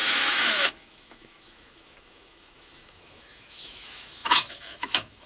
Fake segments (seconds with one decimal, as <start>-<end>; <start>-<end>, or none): 0.0-5.3